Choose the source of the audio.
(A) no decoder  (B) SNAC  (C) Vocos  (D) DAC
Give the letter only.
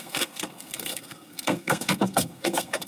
B